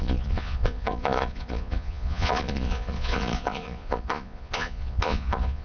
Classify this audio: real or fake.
fake